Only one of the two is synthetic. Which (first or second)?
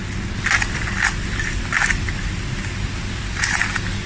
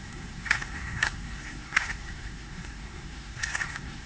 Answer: second